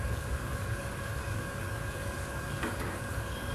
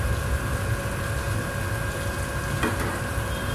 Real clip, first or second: second